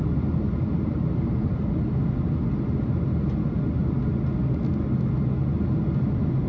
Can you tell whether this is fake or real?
real